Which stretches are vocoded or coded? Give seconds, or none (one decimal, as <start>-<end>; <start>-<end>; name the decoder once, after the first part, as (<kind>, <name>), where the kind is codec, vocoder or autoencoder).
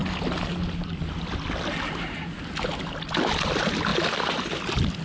3.9-4.6 (vocoder, BigVGAN v2)